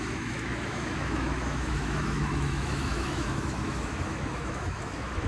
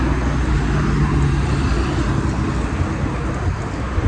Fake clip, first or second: first